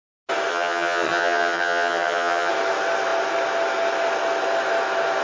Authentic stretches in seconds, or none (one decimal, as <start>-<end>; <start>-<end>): 0.0-0.5; 2.5-5.2